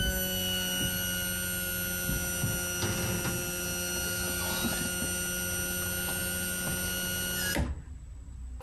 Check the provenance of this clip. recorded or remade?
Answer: recorded